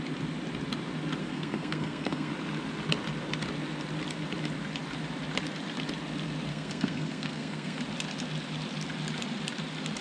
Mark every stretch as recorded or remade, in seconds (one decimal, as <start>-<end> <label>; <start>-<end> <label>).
0.0-1.2 recorded; 1.2-2.3 remade; 2.3-6.5 recorded; 6.5-7.8 remade; 7.8-10.0 recorded